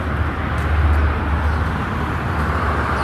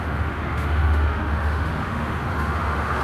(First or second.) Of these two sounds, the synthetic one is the second